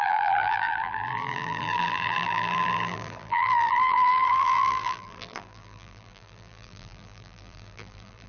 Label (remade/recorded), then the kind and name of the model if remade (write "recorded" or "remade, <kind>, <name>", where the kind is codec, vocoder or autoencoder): remade, vocoder, BigVGAN v2